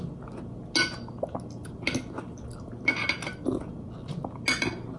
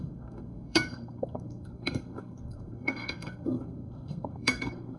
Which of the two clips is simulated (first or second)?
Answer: second